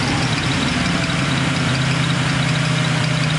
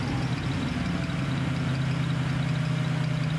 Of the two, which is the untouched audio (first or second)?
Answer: second